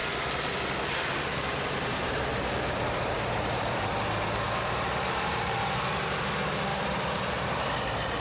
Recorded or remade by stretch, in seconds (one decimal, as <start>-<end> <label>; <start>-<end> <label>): 0.0-1.3 recorded; 1.3-5.8 remade; 5.8-6.7 recorded; 6.7-7.7 remade; 7.7-8.2 recorded